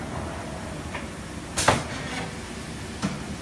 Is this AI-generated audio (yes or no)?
no